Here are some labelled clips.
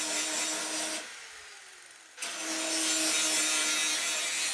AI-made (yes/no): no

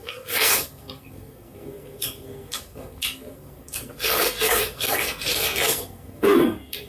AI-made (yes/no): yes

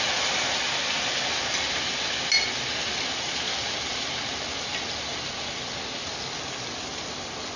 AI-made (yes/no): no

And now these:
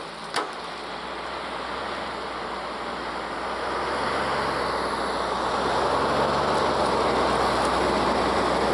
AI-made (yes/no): no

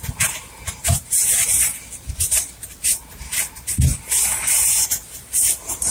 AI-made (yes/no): yes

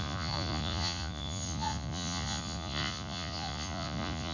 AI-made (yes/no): yes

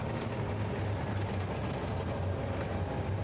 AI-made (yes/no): no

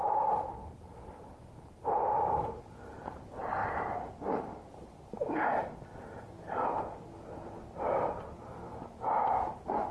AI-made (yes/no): yes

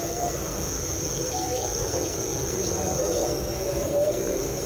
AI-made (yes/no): yes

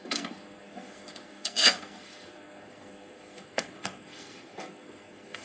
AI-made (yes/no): yes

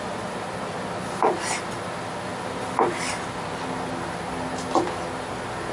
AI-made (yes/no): no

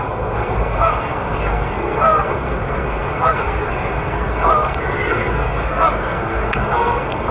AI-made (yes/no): yes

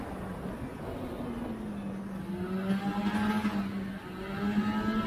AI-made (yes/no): no